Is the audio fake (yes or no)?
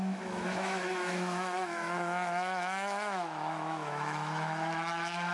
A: yes